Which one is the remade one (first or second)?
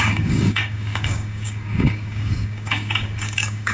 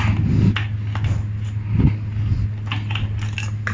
first